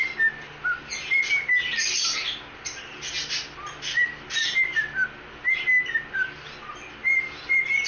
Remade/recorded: recorded